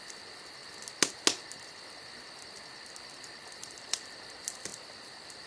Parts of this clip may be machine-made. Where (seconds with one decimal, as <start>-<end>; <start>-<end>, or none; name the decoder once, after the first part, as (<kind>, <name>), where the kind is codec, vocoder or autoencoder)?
0.0-0.6 (vocoder, BigVGAN v2); 3.7-5.5